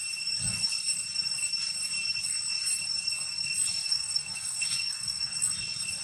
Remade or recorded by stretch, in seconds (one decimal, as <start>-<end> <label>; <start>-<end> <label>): 0.0-3.8 recorded; 3.8-5.3 remade; 5.3-6.0 recorded